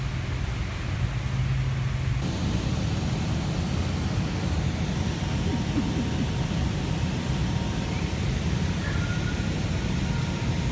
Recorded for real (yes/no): yes